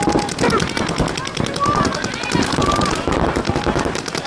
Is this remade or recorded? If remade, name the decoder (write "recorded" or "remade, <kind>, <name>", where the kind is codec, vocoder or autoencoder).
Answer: recorded